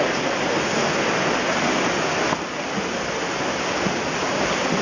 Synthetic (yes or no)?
no